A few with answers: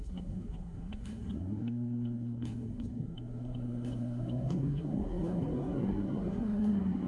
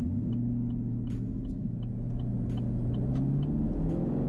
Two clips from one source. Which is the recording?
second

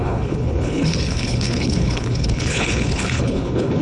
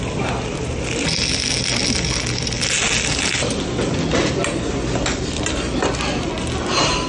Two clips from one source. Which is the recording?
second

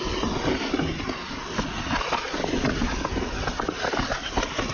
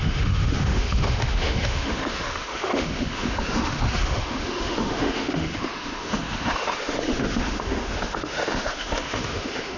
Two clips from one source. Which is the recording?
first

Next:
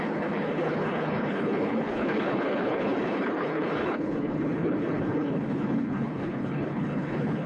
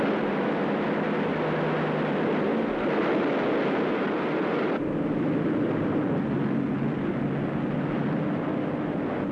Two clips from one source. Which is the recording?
second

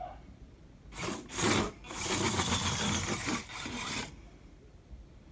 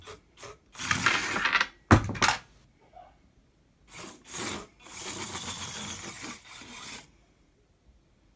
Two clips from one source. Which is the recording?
second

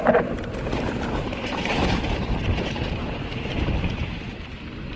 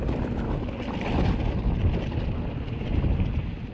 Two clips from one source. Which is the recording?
second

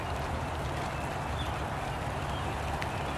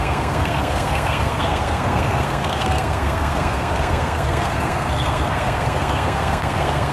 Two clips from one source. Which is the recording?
first